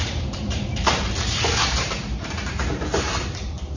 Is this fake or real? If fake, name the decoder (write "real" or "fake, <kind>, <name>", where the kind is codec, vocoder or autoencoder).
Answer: fake, vocoder, BigVGAN v2